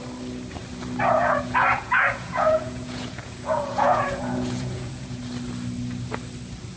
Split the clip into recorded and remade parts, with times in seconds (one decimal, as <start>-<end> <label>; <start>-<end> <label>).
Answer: 0.0-1.1 recorded; 1.1-5.2 remade; 5.2-6.8 recorded